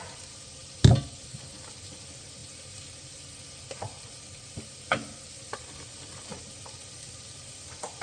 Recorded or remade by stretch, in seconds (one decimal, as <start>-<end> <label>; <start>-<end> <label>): 0.0-8.0 recorded